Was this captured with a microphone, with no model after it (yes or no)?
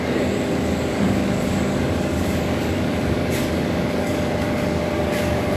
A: no